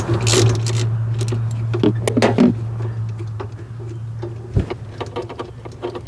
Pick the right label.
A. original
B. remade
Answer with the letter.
A